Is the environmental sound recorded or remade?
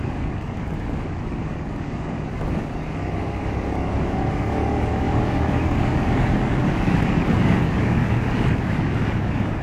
remade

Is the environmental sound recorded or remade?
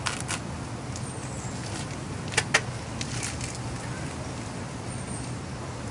recorded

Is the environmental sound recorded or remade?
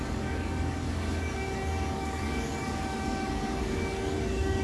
remade